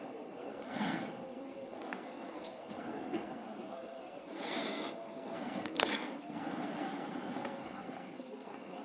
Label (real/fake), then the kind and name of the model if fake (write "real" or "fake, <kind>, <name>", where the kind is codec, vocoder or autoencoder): fake, codec, SNAC